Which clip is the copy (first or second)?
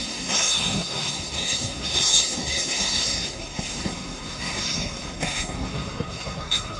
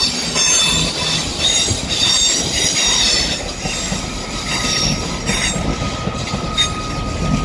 first